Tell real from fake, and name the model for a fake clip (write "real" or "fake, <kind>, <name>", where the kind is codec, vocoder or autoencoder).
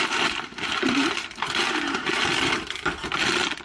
fake, vocoder, BigVGAN v2